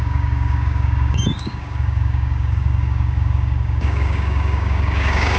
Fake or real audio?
fake